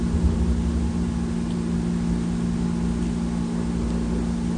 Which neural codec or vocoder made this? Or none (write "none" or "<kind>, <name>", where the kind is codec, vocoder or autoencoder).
none